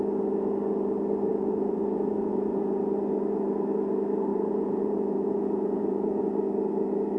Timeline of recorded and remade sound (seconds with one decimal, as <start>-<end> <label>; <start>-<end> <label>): 0.0-1.3 recorded; 1.3-2.8 remade; 2.8-4.3 recorded; 4.3-6.2 remade; 6.2-7.2 recorded